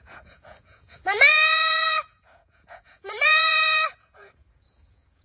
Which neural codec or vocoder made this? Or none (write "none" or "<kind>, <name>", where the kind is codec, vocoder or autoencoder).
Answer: vocoder, Vocos